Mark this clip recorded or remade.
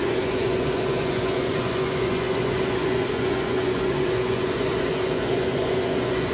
remade